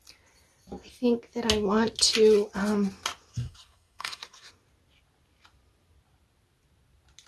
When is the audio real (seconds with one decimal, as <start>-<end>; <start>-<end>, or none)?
0.0-3.3; 4.5-7.3